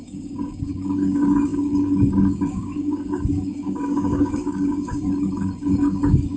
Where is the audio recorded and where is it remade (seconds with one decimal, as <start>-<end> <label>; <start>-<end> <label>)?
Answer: 0.0-6.4 remade